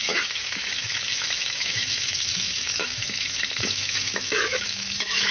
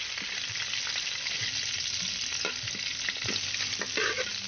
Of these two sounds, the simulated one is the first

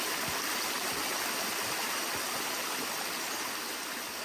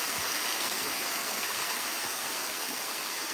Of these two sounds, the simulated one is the second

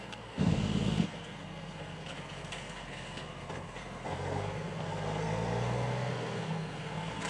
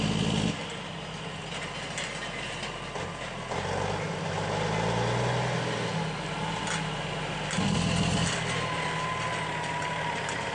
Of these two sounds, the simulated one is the first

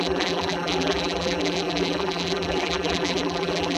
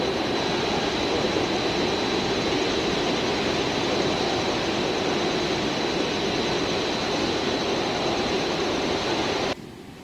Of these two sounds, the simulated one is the first